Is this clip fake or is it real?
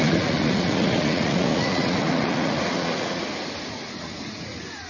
fake